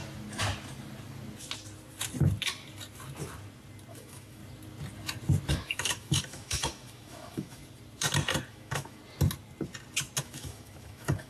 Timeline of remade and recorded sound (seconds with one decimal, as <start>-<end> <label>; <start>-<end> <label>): 0.0-3.9 recorded; 3.9-4.4 remade; 4.4-5.5 recorded; 5.5-7.6 remade; 7.6-8.5 recorded; 8.5-9.0 remade; 9.0-10.2 recorded; 10.2-11.3 remade

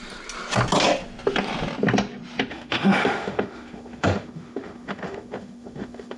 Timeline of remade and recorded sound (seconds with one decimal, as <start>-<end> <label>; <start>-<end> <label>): 0.0-2.5 recorded; 2.5-6.2 remade

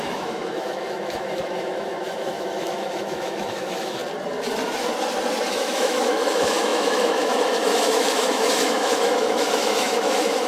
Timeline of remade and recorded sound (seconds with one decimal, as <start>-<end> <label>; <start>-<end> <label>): 0.0-4.0 remade; 4.0-5.5 recorded; 5.5-10.5 remade